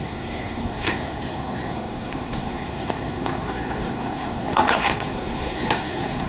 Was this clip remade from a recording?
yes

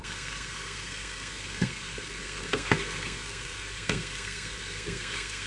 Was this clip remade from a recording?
yes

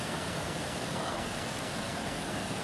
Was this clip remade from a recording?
yes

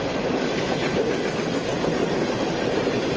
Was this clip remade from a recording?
no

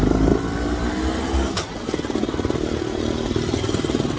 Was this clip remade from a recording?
no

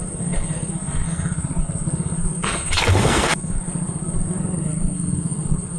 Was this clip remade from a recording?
yes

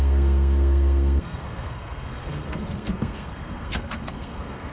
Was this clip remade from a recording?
yes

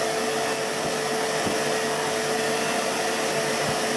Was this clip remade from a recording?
no